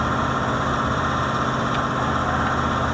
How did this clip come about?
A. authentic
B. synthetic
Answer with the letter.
A